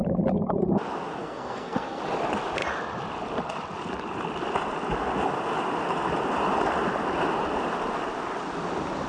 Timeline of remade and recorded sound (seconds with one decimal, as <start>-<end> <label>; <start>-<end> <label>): 0.0-1.2 recorded; 1.2-2.0 remade; 2.0-9.1 recorded